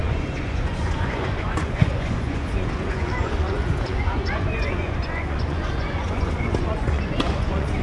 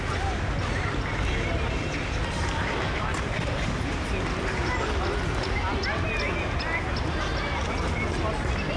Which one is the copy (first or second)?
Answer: first